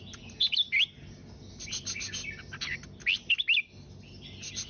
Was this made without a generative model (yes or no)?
yes